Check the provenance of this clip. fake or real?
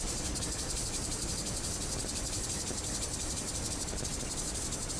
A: real